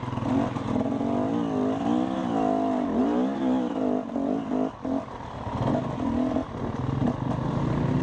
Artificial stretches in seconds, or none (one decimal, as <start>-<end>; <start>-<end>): none